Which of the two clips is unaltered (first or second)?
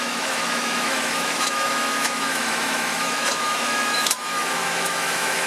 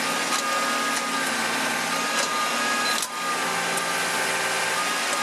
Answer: second